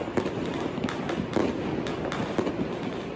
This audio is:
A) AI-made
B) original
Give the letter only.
B